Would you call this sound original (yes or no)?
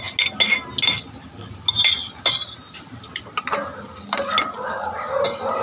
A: yes